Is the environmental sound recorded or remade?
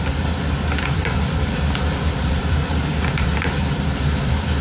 remade